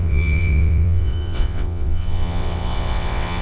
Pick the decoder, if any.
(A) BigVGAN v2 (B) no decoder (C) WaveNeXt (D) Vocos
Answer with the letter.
C